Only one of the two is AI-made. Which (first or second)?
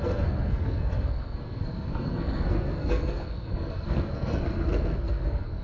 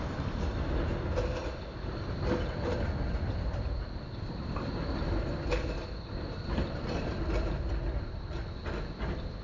first